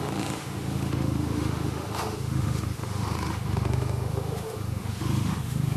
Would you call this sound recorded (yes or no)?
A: no